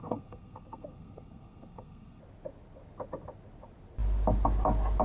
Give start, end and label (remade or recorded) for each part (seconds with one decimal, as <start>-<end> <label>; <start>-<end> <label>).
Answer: 0.0-2.2 remade; 2.2-5.0 recorded